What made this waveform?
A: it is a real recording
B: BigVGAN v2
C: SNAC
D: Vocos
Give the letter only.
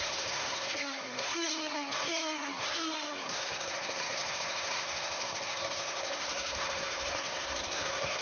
C